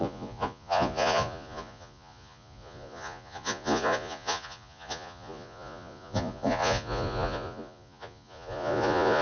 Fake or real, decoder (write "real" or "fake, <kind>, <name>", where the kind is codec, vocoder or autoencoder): fake, vocoder, Vocos